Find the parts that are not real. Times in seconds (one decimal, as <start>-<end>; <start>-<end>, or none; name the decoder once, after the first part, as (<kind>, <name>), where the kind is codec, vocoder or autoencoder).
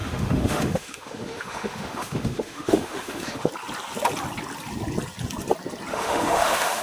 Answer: 0.0-3.5 (autoencoder, DAC-VAE); 5.9-6.8